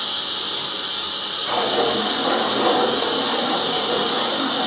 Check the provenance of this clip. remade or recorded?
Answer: recorded